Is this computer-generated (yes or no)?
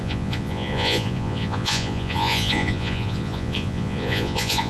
yes